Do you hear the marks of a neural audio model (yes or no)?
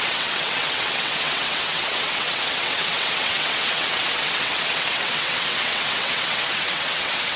yes